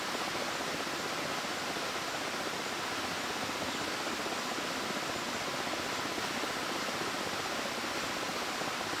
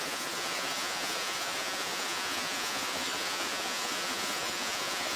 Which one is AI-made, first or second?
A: second